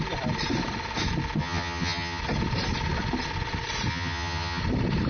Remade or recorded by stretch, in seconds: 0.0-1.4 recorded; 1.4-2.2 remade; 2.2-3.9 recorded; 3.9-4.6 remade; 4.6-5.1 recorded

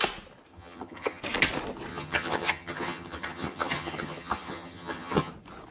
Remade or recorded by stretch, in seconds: 0.0-0.5 recorded; 0.5-1.2 remade; 1.2-1.9 recorded; 1.9-5.3 remade; 5.3-5.7 recorded

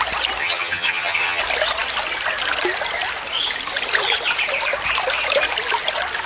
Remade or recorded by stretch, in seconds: 0.0-0.4 recorded; 0.4-1.4 remade; 1.4-6.3 recorded

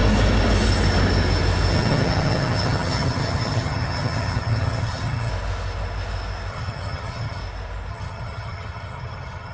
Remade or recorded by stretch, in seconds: 0.0-1.7 recorded; 1.7-5.3 remade; 5.3-6.5 recorded; 6.5-7.4 remade; 7.4-7.9 recorded; 7.9-9.5 remade

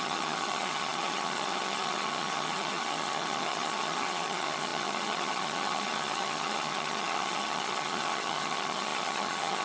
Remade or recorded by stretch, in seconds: 0.0-9.6 remade

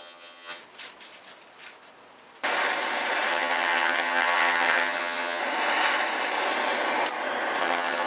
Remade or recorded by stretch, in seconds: 0.0-0.6 remade; 0.6-3.3 recorded; 3.3-5.4 remade; 5.4-7.6 recorded; 7.6-8.1 remade

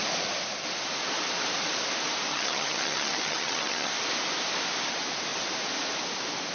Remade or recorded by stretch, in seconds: 0.0-2.3 recorded; 2.3-3.9 remade; 3.9-6.5 recorded

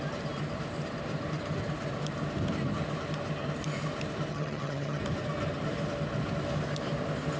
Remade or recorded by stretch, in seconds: 0.0-4.3 recorded; 4.3-5.0 remade; 5.0-7.4 recorded